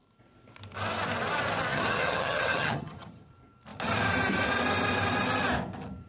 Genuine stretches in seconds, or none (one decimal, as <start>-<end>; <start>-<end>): 0.0-1.7; 3.3-6.1

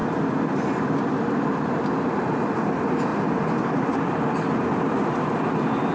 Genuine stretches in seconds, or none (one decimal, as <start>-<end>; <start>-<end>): 0.0-3.1

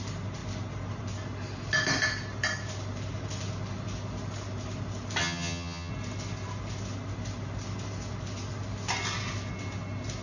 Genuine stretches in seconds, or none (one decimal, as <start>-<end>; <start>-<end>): 0.0-5.2; 5.9-10.2

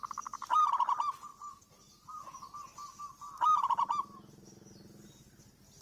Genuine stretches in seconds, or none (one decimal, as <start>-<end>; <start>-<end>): 0.0-5.8

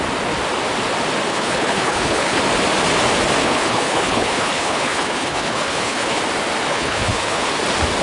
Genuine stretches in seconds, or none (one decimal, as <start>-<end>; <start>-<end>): 0.0-1.3; 2.4-3.4; 6.2-6.7; 7.5-8.0

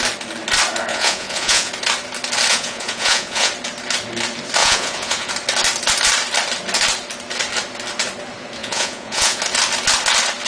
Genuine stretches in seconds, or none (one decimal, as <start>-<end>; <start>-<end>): 0.0-0.9; 1.7-2.5; 3.5-4.6; 5.3-8.6; 9.4-10.5